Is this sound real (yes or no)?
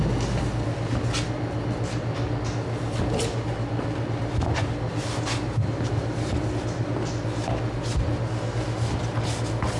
yes